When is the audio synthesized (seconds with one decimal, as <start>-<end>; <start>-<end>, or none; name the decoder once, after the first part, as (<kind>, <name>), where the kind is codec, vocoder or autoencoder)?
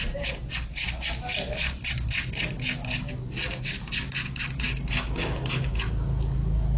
none